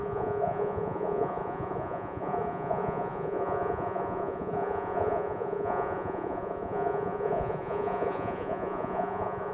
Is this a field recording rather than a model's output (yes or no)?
no